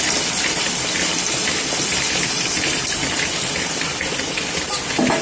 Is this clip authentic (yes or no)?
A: yes